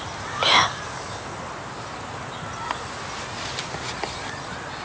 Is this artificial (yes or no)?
no